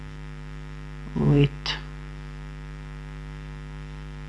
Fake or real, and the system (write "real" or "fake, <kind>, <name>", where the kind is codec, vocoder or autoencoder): real